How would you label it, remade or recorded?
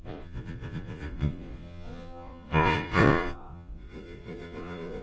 remade